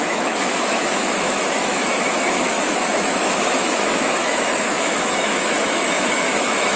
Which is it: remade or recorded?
remade